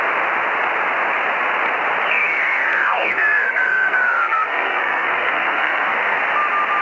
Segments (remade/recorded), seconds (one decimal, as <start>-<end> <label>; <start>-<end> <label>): 0.0-2.1 recorded; 2.1-6.2 remade; 6.2-6.8 recorded